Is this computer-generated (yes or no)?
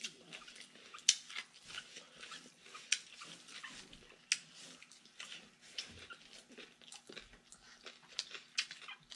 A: no